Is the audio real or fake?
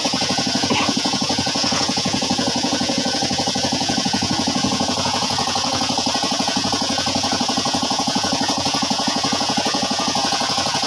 fake